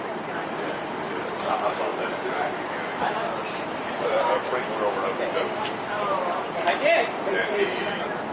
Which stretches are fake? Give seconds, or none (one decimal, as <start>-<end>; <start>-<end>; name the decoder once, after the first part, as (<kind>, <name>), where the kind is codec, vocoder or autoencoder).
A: 0.0-1.9 (vocoder, BigVGAN v2); 3.0-4.5; 5.4-8.3